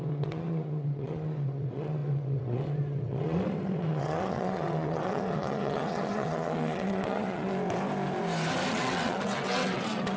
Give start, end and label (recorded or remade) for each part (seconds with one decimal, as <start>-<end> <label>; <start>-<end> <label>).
0.0-7.5 remade; 7.5-8.7 recorded; 8.7-10.2 remade